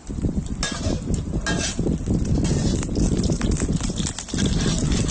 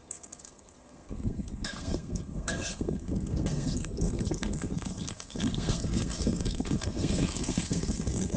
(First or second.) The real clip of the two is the first